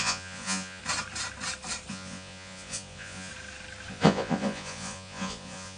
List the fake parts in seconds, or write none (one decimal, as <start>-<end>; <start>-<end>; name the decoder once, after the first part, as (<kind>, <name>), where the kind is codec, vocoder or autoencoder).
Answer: 0.0-0.8 (vocoder, Vocos); 1.9-3.3; 3.9-5.8